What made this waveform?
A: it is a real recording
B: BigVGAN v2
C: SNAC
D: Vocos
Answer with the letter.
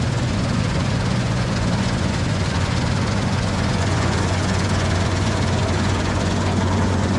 D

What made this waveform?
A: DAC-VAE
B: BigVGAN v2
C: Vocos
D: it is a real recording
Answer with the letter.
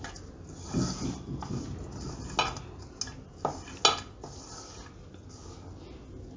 D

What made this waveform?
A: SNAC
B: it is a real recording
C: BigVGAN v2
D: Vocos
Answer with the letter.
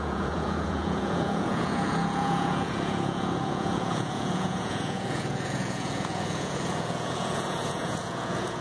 D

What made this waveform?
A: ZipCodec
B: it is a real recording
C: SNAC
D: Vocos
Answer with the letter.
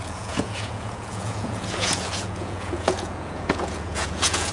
D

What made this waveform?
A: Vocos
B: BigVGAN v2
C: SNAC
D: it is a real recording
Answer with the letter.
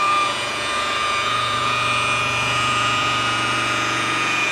A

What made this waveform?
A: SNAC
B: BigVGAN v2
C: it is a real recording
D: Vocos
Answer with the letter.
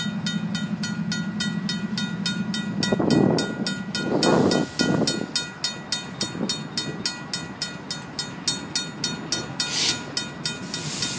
C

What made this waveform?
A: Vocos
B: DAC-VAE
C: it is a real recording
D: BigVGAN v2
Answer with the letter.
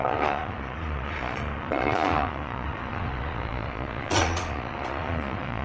A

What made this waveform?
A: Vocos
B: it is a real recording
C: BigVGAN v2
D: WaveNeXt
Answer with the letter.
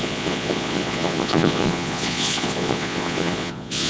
A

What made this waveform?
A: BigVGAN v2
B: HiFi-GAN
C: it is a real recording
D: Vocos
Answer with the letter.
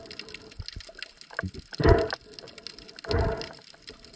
C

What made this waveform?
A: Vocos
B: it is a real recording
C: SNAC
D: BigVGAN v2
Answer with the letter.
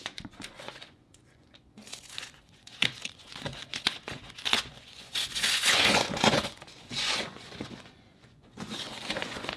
A